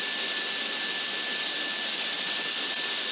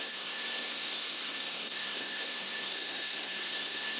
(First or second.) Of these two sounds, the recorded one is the first